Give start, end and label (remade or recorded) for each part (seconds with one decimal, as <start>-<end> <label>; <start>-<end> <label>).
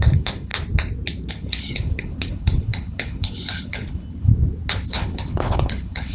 0.0-0.5 remade; 0.5-1.3 recorded; 1.3-4.3 remade; 4.3-4.9 recorded; 4.9-6.1 remade